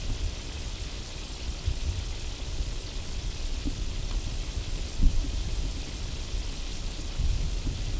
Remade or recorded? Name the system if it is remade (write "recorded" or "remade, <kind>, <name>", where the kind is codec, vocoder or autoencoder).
recorded